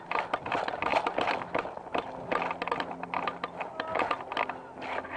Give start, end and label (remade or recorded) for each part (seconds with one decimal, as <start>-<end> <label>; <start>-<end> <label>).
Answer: 0.0-5.2 recorded